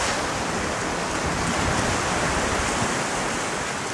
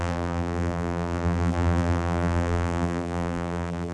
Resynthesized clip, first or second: second